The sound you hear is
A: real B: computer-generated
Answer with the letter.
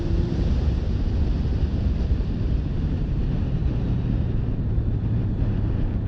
B